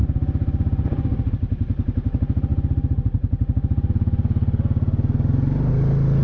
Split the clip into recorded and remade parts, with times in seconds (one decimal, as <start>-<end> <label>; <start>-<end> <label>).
0.0-6.2 recorded